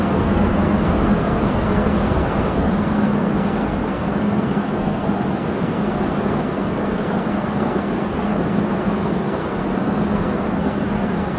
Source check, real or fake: fake